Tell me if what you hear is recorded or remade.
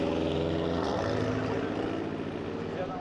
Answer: recorded